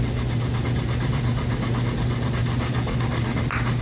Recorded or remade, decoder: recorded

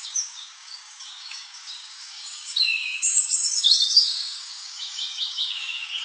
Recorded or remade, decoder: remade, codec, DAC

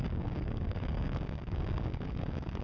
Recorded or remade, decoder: remade, codec, DAC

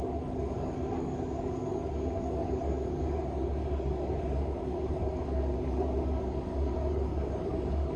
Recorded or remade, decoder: remade, codec, DAC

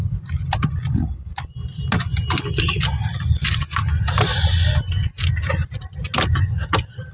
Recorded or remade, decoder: recorded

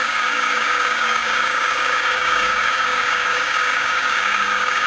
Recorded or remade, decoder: remade, codec, DAC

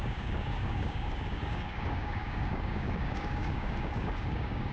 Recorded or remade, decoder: remade, codec, DAC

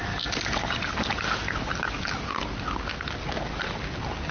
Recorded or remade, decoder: recorded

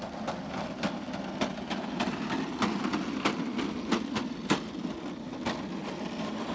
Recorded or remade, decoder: recorded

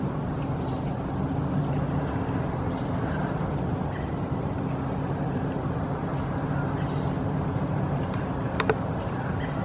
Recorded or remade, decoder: recorded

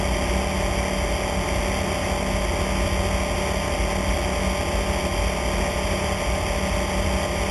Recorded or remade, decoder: recorded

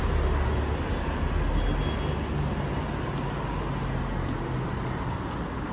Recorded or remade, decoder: recorded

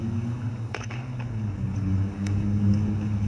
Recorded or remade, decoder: remade, codec, DAC